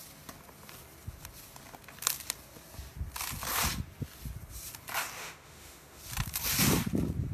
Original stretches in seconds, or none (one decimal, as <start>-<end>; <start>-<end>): 0.0-5.2; 6.0-7.3